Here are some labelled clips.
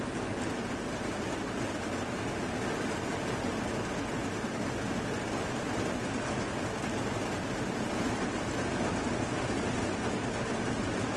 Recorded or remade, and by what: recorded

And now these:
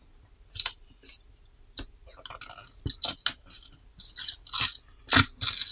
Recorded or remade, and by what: recorded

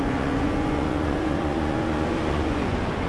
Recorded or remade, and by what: remade, vocoder, Vocos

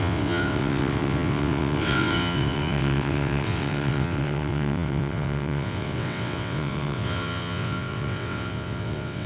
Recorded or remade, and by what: remade, vocoder, WaveNeXt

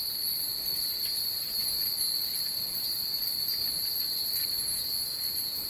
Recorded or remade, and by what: recorded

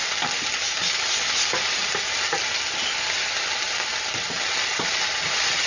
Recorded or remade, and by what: recorded